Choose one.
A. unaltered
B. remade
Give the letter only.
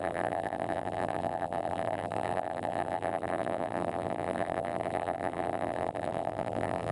B